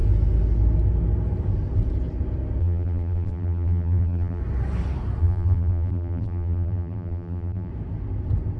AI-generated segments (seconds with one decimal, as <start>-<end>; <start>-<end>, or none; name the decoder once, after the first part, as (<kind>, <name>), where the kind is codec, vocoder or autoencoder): 2.6-4.4 (vocoder, BigVGAN v2); 5.2-7.7